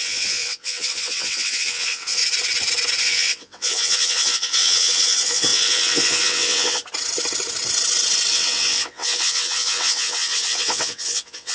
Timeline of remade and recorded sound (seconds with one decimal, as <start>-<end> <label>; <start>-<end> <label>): 0.0-2.2 remade; 2.2-3.0 recorded; 3.0-6.8 remade; 6.8-8.3 recorded; 8.3-11.5 remade